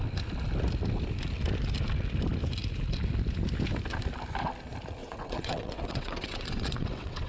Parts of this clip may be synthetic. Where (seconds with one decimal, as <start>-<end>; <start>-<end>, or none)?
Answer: 5.0-7.3